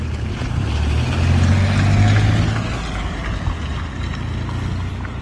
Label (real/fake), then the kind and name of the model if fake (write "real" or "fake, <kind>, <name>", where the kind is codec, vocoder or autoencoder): real